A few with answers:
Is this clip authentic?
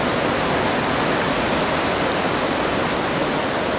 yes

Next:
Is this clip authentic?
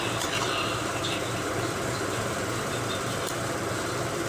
no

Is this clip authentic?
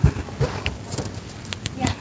yes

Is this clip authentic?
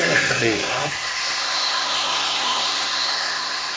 no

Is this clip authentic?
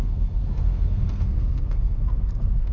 no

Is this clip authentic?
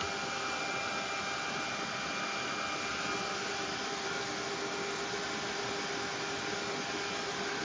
yes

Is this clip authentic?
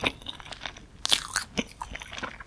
yes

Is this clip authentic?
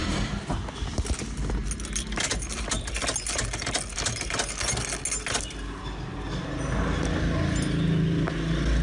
yes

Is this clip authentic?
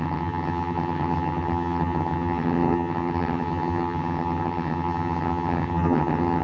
no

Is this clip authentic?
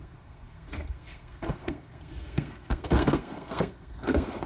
no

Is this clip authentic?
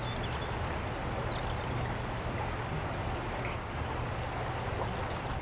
yes